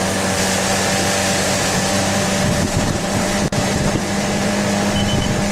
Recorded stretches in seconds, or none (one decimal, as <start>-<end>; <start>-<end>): 0.0-1.2; 4.5-5.5